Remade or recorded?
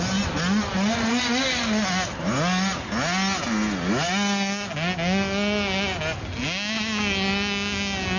recorded